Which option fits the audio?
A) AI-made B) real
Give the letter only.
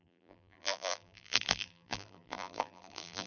A